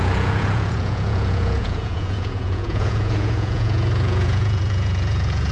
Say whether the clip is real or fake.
fake